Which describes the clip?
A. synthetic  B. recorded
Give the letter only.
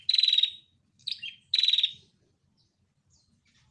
B